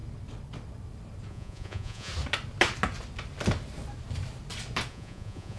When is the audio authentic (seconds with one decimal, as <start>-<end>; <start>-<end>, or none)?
0.0-1.3; 2.1-4.9